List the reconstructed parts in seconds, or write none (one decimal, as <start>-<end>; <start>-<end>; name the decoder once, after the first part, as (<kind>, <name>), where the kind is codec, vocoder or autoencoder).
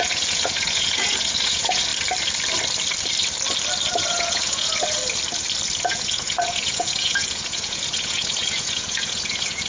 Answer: 0.0-1.9 (vocoder, Vocos); 3.9-5.0; 5.8-9.7